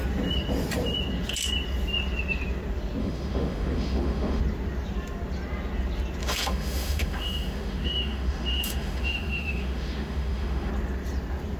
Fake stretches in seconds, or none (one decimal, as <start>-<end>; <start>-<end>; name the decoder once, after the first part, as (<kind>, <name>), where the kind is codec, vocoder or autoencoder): 3.0-4.4 (autoencoder, DAC-VAE); 6.2-10.7